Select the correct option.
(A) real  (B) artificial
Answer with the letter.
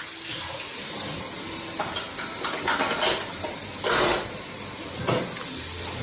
A